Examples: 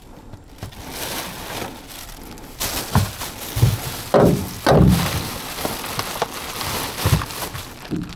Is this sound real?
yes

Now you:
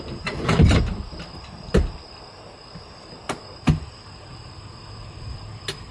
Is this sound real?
yes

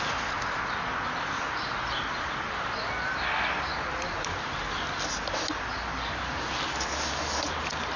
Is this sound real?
yes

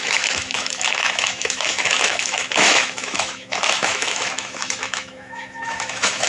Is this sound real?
no